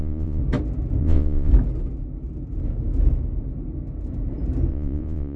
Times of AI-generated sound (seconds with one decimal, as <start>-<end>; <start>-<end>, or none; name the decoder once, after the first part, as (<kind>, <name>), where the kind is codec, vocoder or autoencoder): 0.0-0.4 (vocoder, Vocos); 1.0-1.5; 4.7-5.4